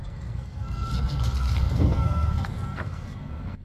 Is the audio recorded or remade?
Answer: remade